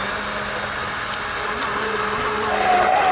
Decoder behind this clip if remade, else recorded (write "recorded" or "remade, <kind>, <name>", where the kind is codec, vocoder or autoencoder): recorded